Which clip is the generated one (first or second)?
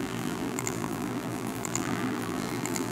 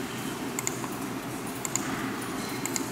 first